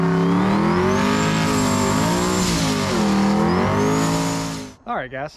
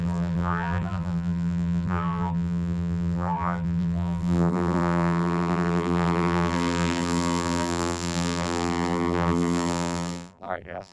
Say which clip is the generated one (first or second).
second